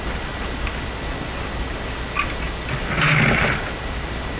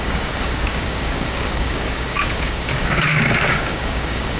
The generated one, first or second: second